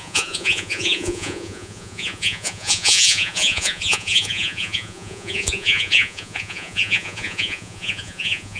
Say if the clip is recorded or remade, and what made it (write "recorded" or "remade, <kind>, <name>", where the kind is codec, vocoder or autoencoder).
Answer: remade, vocoder, Vocos